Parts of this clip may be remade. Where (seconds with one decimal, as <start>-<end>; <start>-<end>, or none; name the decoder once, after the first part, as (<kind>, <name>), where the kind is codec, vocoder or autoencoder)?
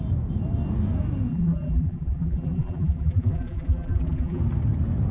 1.3-4.4 (vocoder, BigVGAN v2)